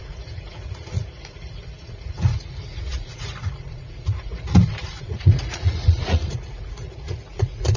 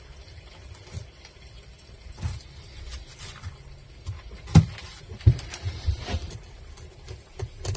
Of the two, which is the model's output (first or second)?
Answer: first